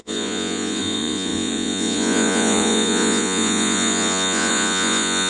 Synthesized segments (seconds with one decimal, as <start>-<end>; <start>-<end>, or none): 0.0-5.3